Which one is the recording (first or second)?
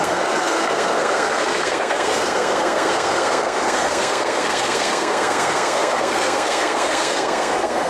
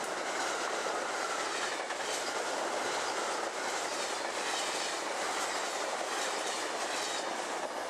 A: second